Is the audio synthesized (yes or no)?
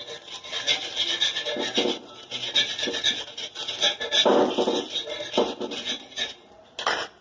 no